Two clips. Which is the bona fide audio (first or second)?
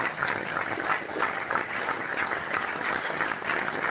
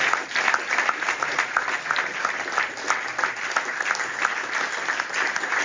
second